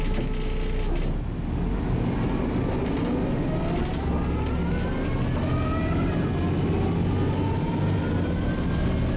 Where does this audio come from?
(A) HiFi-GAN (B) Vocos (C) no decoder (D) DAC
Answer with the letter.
C